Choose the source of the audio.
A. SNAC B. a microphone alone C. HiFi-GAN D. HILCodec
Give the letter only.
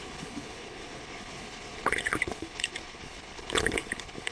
D